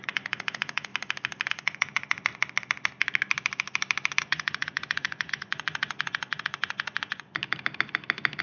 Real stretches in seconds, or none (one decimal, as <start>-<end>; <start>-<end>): 0.9-1.5; 2.3-4.2; 7.4-8.4